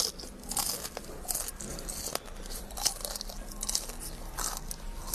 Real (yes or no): yes